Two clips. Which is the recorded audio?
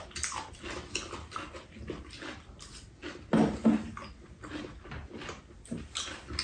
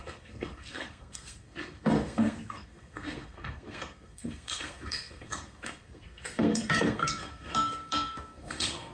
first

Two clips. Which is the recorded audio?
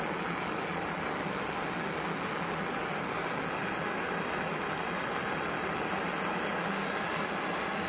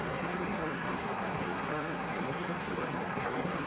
first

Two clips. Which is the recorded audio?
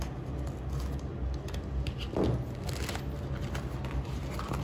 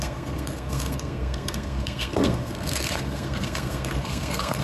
first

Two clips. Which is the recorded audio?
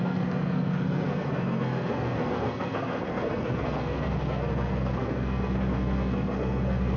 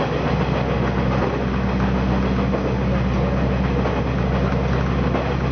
second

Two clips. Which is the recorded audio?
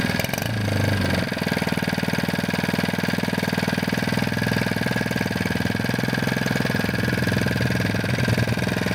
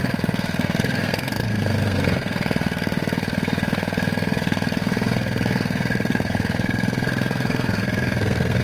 first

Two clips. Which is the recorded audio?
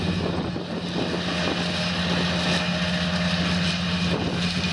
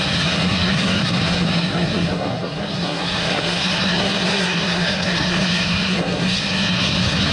first